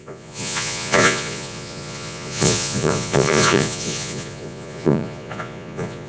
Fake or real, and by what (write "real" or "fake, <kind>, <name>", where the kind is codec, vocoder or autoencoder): fake, vocoder, Vocos